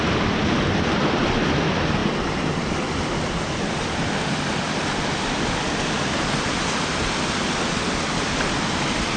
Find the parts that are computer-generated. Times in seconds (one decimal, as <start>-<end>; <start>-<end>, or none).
none

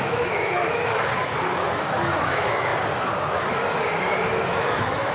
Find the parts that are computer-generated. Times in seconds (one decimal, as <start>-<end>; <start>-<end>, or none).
0.0-1.1; 2.2-2.7; 4.5-5.1

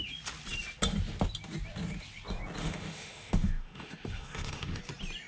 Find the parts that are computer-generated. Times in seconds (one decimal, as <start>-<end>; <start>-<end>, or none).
2.6-4.8

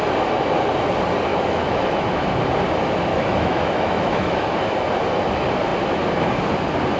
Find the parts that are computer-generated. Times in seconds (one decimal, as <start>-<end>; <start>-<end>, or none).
1.3-2.4; 3.1-4.6

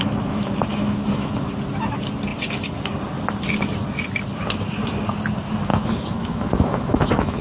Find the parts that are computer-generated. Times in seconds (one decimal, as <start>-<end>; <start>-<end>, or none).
0.7-1.5; 5.7-7.4

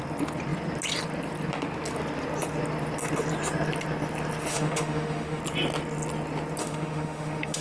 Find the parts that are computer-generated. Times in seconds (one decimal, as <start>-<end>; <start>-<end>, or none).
4.5-5.4; 6.6-7.6

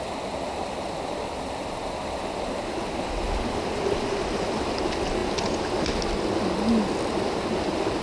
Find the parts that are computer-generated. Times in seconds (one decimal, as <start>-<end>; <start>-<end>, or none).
none

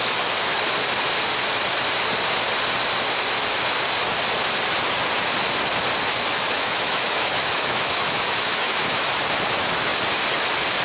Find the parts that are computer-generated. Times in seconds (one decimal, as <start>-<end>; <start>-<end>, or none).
6.1-9.1